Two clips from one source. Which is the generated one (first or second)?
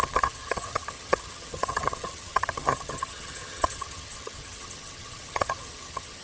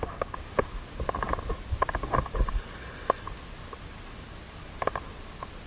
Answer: first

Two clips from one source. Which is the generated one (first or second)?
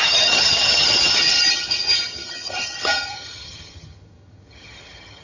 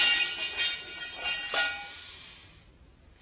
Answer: first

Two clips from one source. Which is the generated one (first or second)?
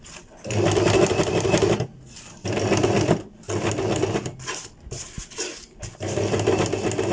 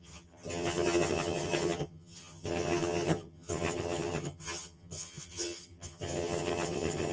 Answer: second